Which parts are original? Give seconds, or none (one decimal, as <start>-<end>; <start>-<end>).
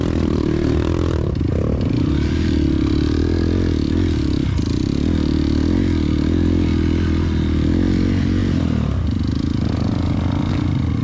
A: 0.0-11.0